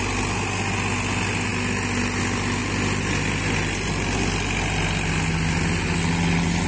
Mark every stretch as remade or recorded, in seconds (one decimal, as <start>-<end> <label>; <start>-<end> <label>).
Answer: 0.0-6.7 recorded